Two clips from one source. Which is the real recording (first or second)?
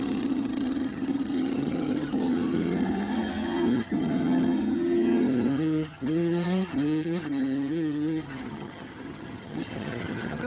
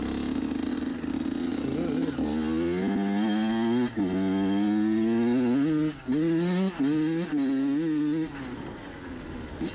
second